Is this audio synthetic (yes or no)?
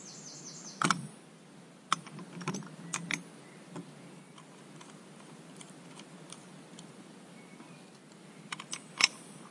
no